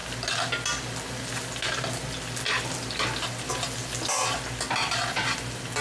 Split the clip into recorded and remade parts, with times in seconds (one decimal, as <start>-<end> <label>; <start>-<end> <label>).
0.0-5.8 recorded